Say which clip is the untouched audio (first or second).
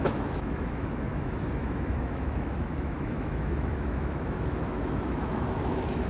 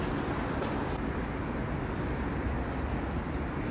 second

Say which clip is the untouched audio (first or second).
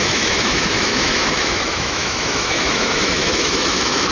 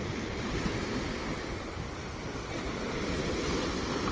second